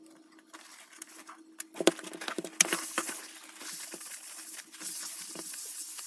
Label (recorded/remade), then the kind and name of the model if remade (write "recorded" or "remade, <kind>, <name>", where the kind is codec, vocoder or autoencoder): recorded